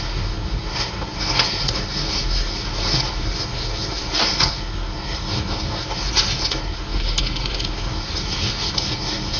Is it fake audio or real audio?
fake